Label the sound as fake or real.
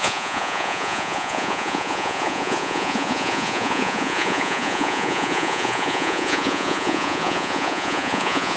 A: fake